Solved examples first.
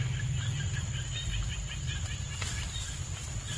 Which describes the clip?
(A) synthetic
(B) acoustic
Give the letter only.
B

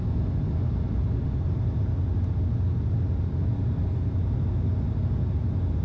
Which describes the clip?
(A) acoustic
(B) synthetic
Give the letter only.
A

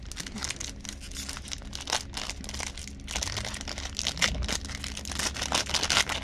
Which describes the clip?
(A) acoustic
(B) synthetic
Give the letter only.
A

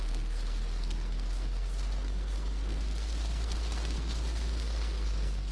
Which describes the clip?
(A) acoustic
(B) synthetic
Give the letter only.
B